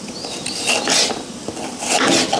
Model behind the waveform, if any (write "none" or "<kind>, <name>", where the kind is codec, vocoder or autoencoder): none